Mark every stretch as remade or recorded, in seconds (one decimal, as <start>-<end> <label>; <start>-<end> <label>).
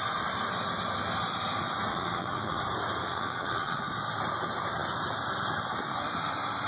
0.0-1.9 recorded; 1.9-2.6 remade; 2.6-3.0 recorded; 3.0-3.8 remade; 3.8-6.7 recorded